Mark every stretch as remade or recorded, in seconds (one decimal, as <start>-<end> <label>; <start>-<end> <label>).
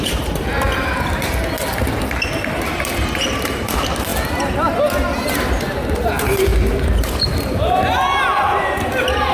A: 0.0-9.3 recorded